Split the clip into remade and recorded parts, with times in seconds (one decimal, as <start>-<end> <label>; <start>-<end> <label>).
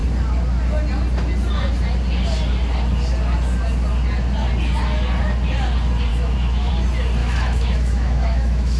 0.0-6.1 recorded; 6.1-6.7 remade; 6.7-7.2 recorded; 7.2-8.8 remade